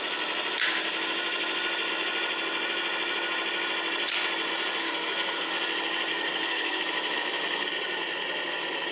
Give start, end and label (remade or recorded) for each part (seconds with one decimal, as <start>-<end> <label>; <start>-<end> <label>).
0.0-4.8 recorded; 4.8-5.5 remade; 5.5-6.1 recorded; 6.1-6.8 remade; 6.8-8.9 recorded